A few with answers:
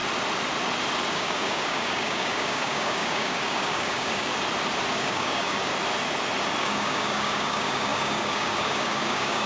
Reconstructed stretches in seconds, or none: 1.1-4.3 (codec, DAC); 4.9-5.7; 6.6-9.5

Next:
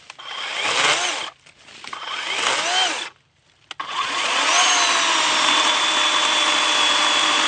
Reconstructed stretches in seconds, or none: 3.8-4.7 (vocoder, Vocos)

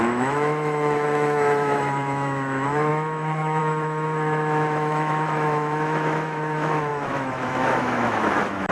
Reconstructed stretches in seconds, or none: 0.0-8.7 (autoencoder, DAC-VAE)

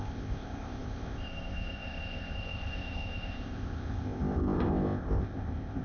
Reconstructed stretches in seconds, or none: 0.0-5.8 (codec, ZipCodec)